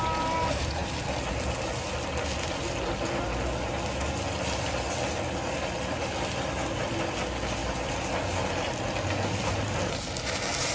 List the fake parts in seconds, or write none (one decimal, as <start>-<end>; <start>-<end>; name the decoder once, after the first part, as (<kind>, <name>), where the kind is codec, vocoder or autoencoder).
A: none